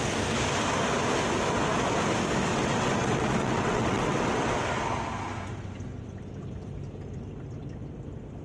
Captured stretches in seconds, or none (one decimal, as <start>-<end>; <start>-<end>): 0.0-2.5; 4.7-8.4